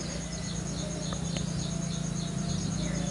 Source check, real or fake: real